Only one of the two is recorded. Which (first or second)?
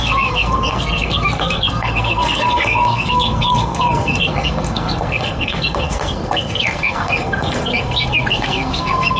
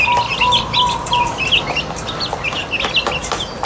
second